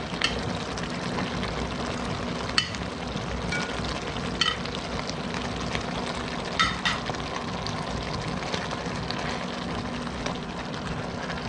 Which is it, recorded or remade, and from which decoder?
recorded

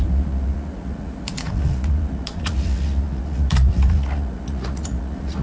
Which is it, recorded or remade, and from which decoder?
remade, vocoder, Vocos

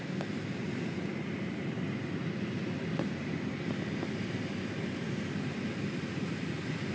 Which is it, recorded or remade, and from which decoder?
recorded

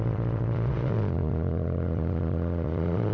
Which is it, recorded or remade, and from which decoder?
remade, vocoder, Vocos